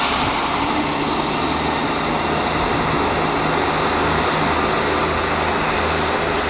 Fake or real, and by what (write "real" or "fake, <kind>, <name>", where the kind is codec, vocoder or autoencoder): real